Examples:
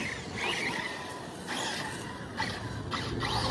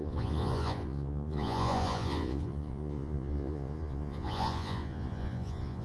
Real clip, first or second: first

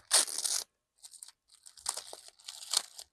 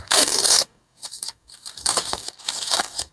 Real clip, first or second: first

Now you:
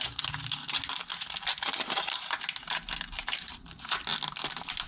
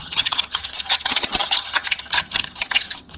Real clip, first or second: first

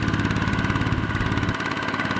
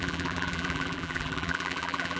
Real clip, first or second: first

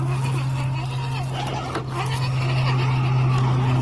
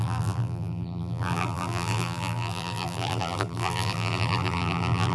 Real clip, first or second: first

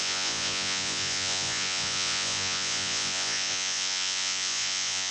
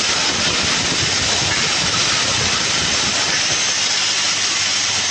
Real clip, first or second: second